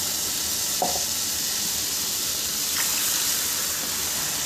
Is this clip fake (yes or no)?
no